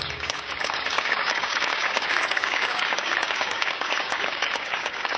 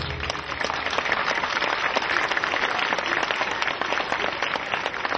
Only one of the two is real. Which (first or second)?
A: second